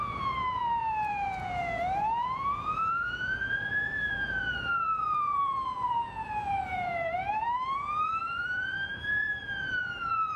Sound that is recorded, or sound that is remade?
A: remade